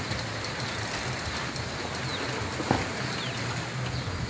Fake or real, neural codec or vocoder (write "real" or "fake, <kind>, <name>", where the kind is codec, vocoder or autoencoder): real